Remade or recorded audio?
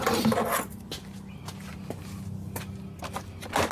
recorded